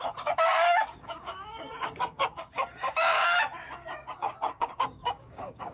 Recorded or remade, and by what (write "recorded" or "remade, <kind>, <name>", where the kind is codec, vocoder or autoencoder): remade, codec, DAC